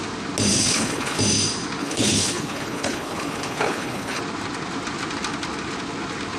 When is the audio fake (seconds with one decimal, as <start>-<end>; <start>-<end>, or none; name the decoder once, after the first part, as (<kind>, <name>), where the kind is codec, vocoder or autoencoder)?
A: 0.5-1.2 (codec, HILCodec); 1.8-4.2